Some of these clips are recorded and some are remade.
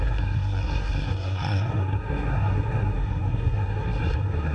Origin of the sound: remade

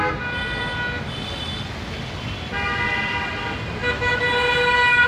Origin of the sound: recorded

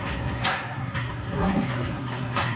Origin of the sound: remade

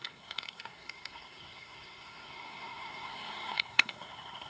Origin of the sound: remade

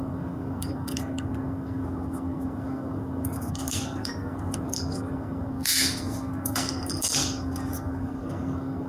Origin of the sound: remade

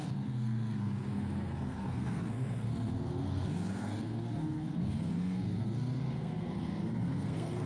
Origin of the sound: remade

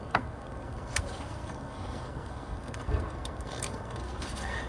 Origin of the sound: remade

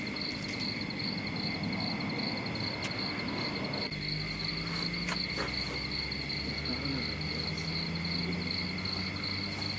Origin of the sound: recorded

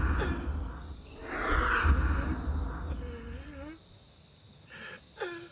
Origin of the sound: recorded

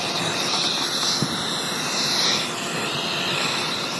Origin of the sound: recorded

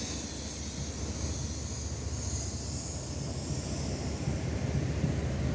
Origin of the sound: recorded